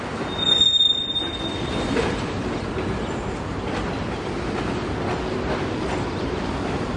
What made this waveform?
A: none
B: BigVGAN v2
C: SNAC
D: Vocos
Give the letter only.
A